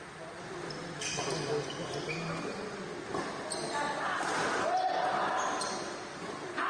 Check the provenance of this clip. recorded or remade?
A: recorded